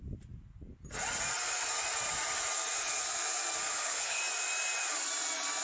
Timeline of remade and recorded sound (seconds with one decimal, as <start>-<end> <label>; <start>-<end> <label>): 0.0-3.7 recorded; 3.7-4.2 remade; 4.2-5.6 recorded